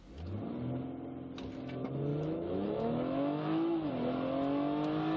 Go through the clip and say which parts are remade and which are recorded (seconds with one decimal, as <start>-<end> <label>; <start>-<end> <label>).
0.0-2.1 recorded; 2.1-3.9 remade; 3.9-5.2 recorded